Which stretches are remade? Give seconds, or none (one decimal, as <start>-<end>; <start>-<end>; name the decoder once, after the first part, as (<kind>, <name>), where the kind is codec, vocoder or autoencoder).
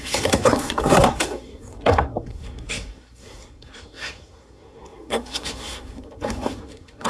0.0-7.1 (codec, SNAC)